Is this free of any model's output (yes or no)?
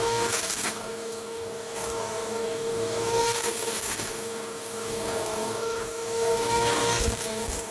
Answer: no